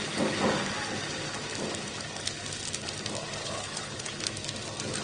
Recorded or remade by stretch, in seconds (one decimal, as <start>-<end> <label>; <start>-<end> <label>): 0.0-3.4 recorded; 3.4-4.2 remade; 4.2-5.0 recorded